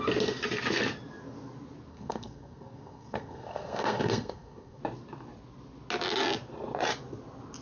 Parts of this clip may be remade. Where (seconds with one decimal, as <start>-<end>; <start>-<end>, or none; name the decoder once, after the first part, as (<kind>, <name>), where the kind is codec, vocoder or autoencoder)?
1.9-4.8 (codec, SNAC)

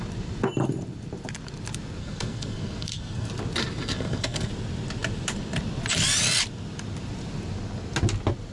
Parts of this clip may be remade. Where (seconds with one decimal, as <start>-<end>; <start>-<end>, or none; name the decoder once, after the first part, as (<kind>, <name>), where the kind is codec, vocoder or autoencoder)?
2.0-3.3 (codec, SNAC); 3.8-4.5

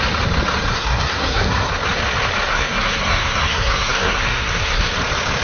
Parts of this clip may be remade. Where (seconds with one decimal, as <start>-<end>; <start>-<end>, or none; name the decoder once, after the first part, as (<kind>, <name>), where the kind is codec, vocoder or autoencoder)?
0.7-1.7 (codec, SNAC); 2.5-4.8